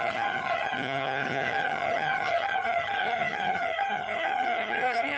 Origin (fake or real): fake